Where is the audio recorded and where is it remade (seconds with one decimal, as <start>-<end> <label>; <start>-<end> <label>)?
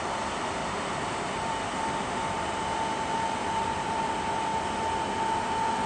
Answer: 0.0-0.6 recorded; 0.6-4.1 remade; 4.1-5.9 recorded